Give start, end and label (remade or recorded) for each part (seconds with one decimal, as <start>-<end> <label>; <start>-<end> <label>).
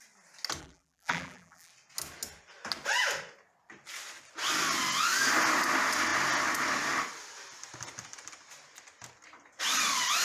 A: 0.0-0.6 recorded; 0.6-1.7 remade; 1.7-10.2 recorded